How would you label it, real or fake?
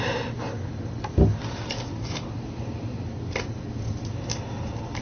real